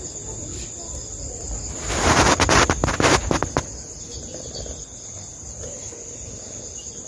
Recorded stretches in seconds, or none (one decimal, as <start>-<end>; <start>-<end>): 0.0-7.1